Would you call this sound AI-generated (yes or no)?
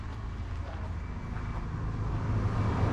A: no